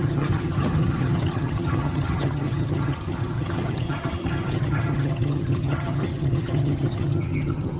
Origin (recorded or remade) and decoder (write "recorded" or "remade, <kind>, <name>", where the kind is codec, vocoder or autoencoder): remade, vocoder, HiFi-GAN